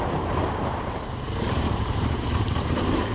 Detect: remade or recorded remade